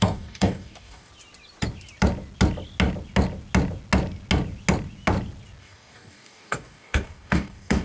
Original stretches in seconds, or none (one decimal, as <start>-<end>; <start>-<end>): 1.1-5.6